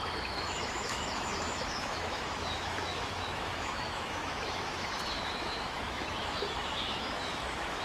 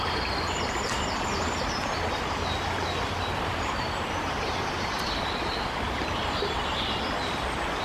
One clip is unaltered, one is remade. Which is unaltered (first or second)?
second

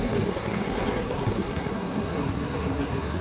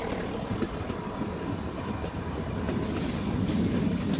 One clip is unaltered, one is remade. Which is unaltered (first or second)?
second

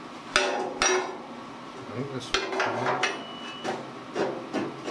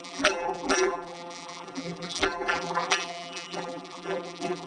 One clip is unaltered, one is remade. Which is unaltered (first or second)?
first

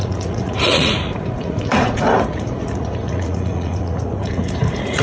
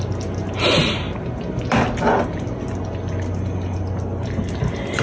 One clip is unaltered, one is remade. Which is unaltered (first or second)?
second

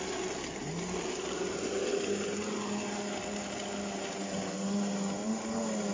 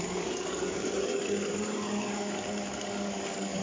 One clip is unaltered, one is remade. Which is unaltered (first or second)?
first